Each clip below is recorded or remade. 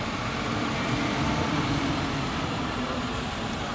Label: remade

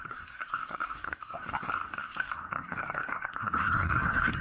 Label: remade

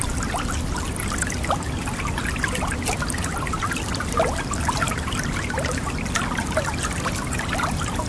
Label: recorded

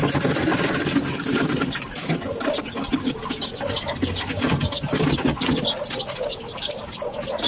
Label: recorded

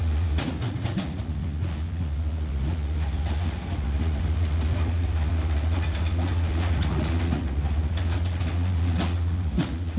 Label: remade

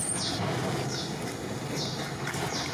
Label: recorded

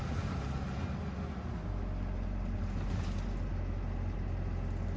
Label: recorded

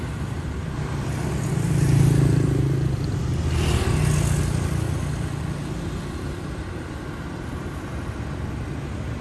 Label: recorded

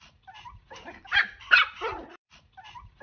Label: remade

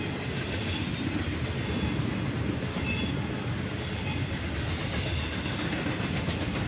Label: recorded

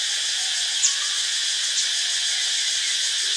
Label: remade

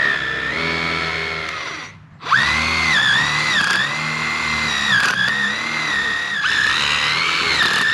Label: recorded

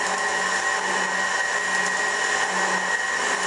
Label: recorded